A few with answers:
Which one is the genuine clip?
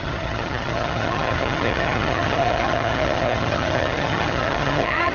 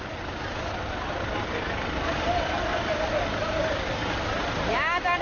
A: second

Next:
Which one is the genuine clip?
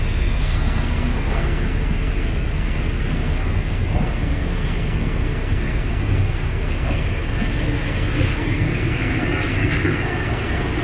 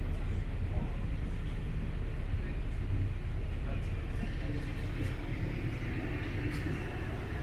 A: second